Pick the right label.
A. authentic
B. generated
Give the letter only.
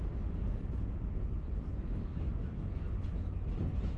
A